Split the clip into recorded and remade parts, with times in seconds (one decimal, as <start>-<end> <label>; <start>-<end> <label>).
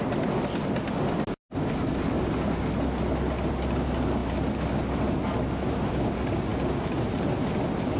0.0-8.0 recorded